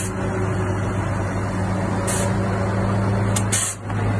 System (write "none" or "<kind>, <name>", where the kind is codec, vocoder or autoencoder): none